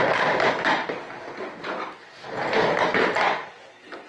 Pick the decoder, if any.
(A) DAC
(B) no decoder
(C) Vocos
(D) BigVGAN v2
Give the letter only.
B